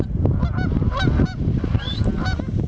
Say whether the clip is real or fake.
real